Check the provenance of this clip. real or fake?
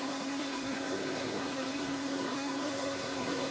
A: fake